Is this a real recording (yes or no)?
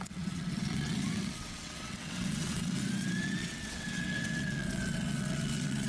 no